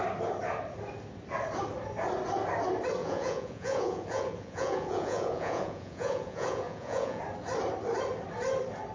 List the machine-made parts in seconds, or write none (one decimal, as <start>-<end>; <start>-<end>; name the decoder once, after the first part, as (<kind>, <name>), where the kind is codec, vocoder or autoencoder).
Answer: 3.0-7.2 (vocoder, Vocos)